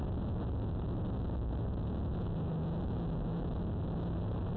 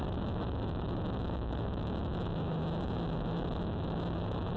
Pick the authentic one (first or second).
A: first